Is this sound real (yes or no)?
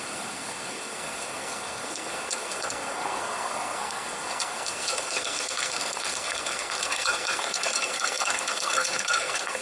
no